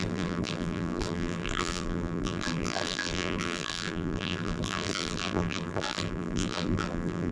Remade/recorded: remade